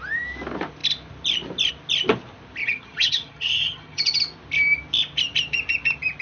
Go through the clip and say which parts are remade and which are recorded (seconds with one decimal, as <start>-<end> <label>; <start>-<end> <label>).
0.0-2.6 recorded; 2.6-4.2 remade; 4.2-6.2 recorded